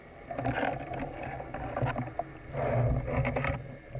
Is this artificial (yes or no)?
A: no